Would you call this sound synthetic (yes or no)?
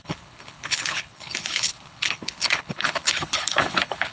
yes